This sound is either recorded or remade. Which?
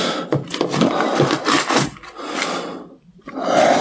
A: recorded